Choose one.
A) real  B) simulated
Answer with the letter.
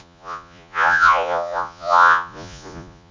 B